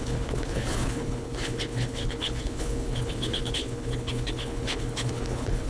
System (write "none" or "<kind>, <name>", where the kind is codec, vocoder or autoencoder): codec, HILCodec